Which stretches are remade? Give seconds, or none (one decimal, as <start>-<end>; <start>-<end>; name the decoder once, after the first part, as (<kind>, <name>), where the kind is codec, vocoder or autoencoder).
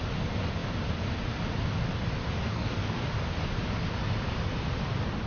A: 2.5-3.0 (codec, DAC)